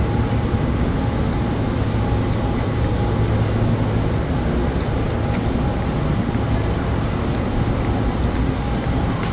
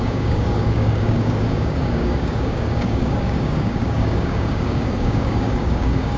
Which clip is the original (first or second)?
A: first